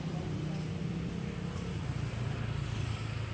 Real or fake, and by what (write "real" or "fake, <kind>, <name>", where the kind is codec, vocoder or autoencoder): real